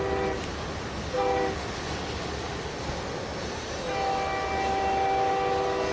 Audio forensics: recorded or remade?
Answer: recorded